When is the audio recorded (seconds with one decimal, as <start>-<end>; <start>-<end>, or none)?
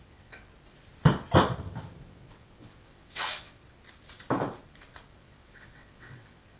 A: 0.5-2.0; 3.6-5.2